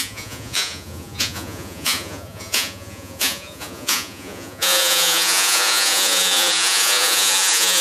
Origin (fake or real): fake